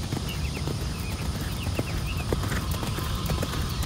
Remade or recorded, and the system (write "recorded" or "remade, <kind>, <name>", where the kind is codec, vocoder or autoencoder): remade, vocoder, BigVGAN v2